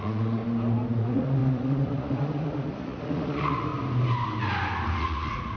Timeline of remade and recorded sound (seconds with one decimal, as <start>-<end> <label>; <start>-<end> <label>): 0.0-0.4 remade; 0.4-0.9 recorded; 0.9-3.7 remade; 3.7-5.0 recorded; 5.0-5.6 remade